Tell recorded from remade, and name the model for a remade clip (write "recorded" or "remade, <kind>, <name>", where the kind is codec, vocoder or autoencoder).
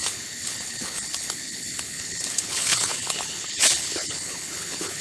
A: remade, codec, HILCodec